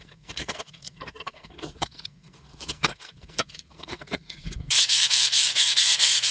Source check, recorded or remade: remade